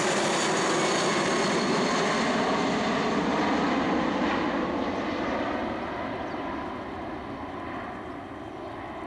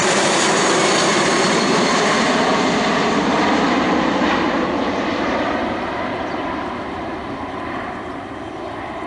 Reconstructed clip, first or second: second